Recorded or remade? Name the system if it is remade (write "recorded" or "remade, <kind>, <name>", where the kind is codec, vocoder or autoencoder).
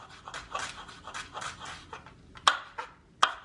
recorded